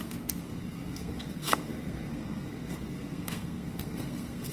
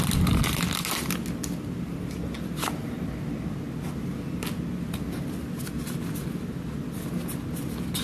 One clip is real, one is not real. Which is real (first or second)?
second